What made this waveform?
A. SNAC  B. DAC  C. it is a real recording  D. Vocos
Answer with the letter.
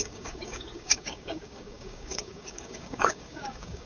B